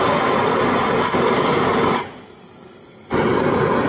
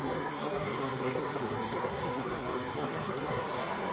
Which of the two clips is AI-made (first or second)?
second